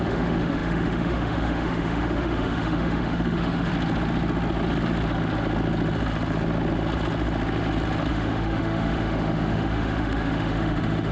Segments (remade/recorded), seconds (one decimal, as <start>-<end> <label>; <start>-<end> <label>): 0.0-3.7 remade; 3.7-8.1 recorded; 8.1-11.1 remade